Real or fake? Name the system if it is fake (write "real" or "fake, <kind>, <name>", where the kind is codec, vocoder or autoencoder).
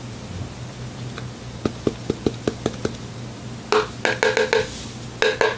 real